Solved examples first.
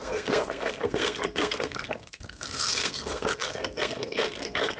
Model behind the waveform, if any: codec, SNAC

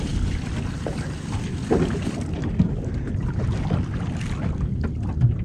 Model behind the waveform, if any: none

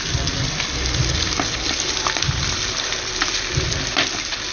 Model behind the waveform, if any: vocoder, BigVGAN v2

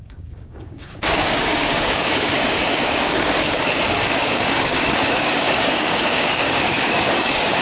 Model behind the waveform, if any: codec, DAC